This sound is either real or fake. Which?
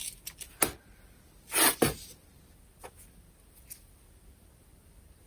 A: real